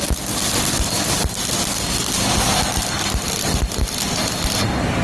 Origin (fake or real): real